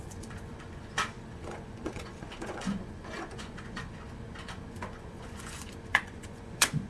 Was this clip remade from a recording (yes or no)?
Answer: yes